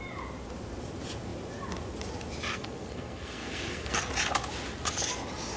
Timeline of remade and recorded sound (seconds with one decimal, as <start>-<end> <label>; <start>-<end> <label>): 0.0-2.5 recorded; 2.5-4.1 remade; 4.1-5.6 recorded